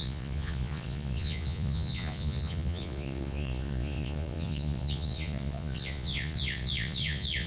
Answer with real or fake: fake